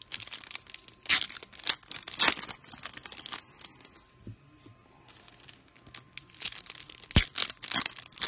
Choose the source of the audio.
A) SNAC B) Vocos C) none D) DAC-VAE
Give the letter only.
C